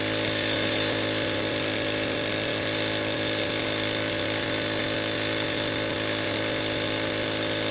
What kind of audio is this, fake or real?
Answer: real